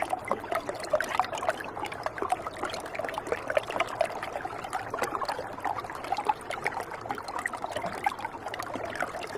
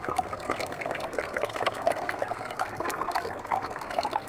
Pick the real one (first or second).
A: first